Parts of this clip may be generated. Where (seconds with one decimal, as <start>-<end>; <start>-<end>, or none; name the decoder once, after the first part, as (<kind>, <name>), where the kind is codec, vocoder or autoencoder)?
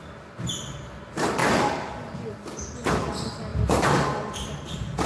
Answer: none